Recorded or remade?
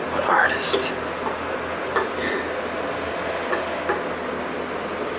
recorded